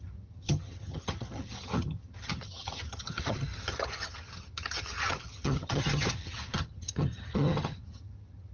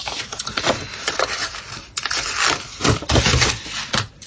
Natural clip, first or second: second